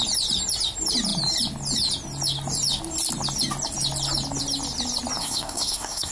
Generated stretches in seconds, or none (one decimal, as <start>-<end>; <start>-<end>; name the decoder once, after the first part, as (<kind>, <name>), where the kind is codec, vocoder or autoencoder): 5.2-6.1 (codec, SNAC)